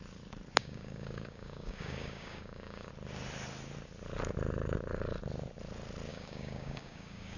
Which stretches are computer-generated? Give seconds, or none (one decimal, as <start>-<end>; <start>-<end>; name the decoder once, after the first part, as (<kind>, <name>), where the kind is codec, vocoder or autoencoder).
0.6-2.9 (codec, DAC); 6.1-7.4